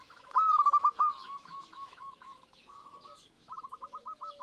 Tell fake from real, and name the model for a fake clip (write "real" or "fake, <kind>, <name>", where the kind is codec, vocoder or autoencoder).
fake, autoencoder, DAC-VAE